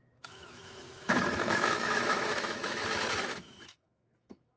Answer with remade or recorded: remade